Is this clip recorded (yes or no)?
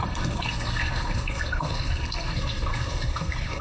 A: no